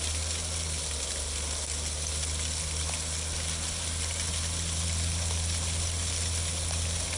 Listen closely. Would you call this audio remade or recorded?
recorded